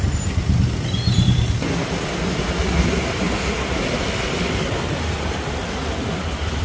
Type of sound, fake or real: real